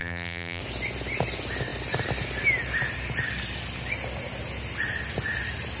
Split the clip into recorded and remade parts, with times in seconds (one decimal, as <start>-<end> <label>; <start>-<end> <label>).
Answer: 0.0-0.6 remade; 0.6-5.8 recorded